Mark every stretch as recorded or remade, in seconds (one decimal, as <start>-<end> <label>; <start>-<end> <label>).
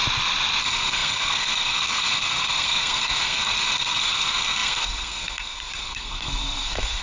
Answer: 0.0-0.6 recorded; 0.6-7.0 remade